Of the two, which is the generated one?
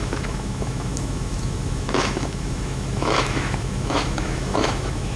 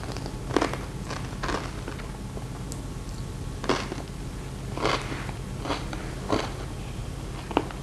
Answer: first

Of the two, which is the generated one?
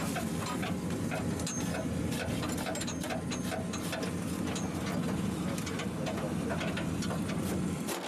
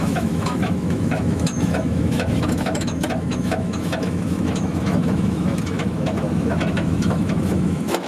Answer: second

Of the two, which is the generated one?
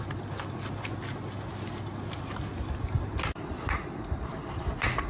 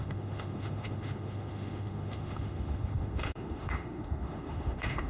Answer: second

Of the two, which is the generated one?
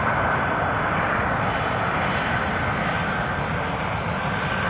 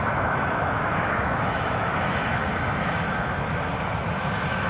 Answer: second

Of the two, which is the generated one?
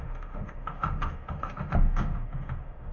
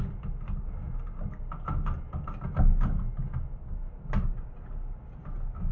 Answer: first